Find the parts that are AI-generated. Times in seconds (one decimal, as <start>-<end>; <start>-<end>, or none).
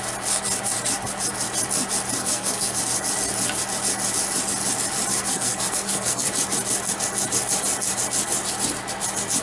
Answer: 2.2-2.8; 5.1-6.3